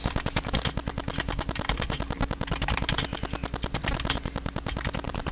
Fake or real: real